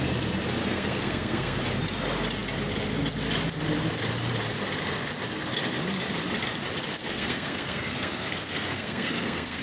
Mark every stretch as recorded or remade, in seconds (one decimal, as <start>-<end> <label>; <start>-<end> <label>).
0.0-0.6 recorded; 0.6-1.6 remade; 1.6-7.0 recorded; 7.0-9.6 remade